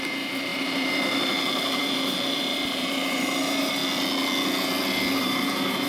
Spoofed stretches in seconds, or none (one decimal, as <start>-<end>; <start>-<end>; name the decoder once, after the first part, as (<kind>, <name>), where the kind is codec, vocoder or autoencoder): 0.0-3.8 (vocoder, BigVGAN v2); 5.2-5.9